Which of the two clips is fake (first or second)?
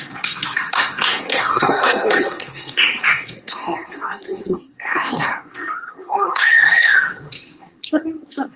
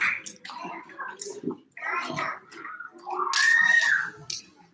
first